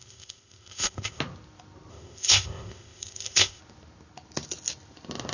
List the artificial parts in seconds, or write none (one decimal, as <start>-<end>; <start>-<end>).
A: 0.0-1.2; 1.9-3.6